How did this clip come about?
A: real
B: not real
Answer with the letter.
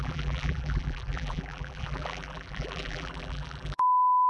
B